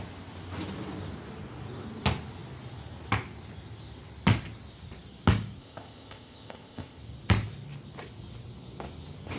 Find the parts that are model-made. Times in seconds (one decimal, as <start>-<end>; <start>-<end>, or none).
5.6-7.0